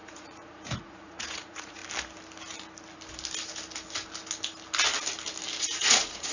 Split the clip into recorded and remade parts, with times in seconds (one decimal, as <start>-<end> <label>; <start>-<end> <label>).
0.0-1.8 remade; 1.8-5.6 recorded; 5.6-6.3 remade

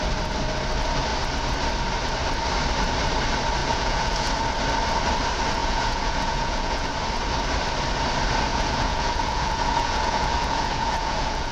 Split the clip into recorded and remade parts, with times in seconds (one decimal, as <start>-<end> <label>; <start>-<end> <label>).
0.0-3.6 recorded; 3.6-4.3 remade; 4.3-5.6 recorded; 5.6-6.9 remade; 6.9-8.5 recorded; 8.5-11.5 remade

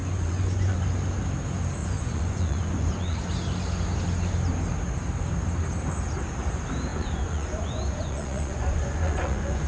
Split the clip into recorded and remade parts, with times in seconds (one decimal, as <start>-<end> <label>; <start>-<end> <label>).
0.0-0.8 remade; 0.8-1.8 recorded; 1.8-3.3 remade; 3.3-6.9 recorded; 6.9-9.7 remade

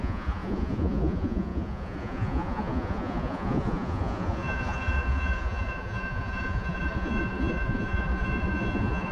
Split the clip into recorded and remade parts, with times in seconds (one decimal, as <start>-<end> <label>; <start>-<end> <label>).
0.0-9.1 remade